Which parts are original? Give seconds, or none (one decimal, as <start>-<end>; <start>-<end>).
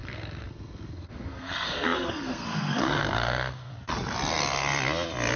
3.7-5.4